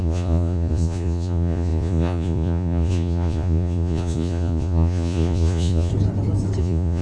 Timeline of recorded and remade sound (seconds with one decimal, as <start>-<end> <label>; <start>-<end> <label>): 0.0-5.9 remade; 5.9-6.6 recorded; 6.6-7.0 remade